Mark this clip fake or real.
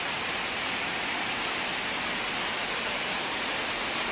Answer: real